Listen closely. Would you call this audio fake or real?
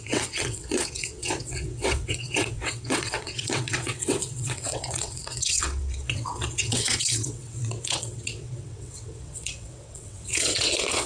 fake